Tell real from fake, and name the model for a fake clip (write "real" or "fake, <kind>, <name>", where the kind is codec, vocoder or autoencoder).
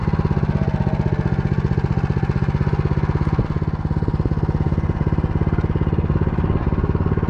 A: real